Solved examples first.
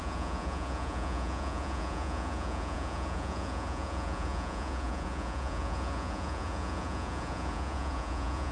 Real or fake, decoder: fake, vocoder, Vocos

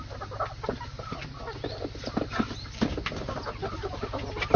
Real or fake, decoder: real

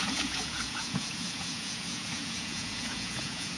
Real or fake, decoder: fake, vocoder, Vocos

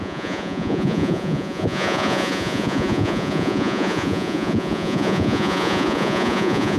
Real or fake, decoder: fake, vocoder, Vocos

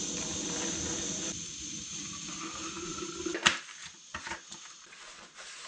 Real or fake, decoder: real